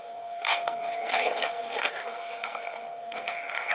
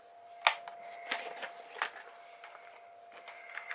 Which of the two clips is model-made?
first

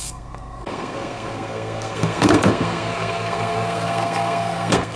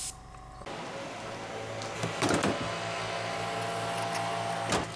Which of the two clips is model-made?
first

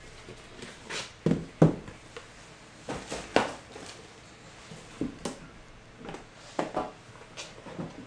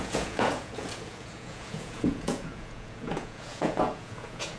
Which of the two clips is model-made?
second